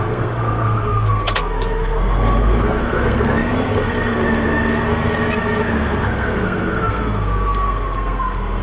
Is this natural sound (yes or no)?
no